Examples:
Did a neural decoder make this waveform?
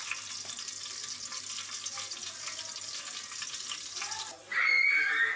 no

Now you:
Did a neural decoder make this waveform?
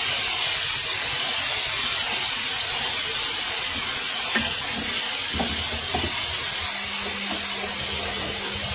no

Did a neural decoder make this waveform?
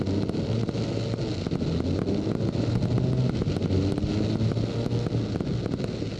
no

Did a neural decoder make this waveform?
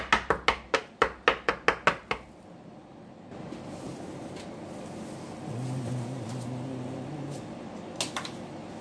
no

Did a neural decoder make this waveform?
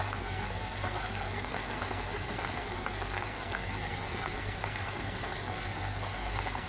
yes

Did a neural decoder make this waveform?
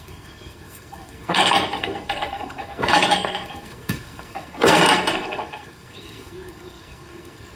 yes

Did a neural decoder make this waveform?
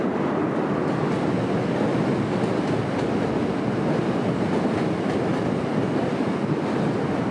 no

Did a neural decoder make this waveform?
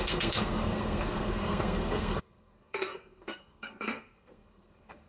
yes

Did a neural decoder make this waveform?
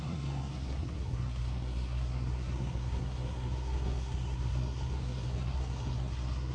yes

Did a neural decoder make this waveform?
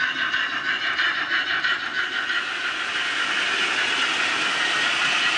no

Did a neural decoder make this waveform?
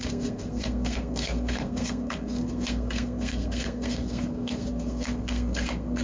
yes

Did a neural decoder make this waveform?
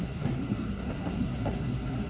yes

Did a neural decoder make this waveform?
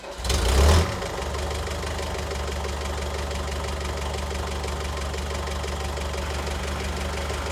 no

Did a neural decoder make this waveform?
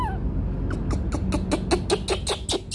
no